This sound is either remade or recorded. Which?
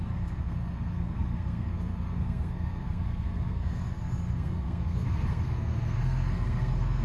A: remade